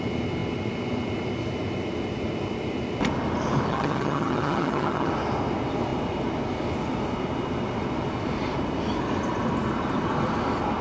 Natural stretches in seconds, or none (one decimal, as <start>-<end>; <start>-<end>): 0.0-3.7; 5.1-10.8